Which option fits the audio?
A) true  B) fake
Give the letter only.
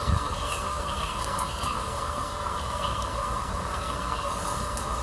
B